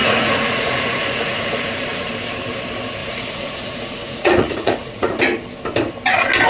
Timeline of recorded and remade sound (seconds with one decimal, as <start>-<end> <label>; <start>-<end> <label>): 0.0-2.1 remade; 2.1-3.0 recorded; 3.0-5.2 remade; 5.2-6.5 recorded